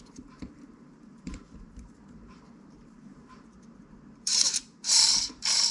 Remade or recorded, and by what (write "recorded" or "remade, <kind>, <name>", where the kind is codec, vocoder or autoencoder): remade, vocoder, BigVGAN v2